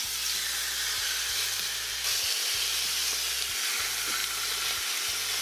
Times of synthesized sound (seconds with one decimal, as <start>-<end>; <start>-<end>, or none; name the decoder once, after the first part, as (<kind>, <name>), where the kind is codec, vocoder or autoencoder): none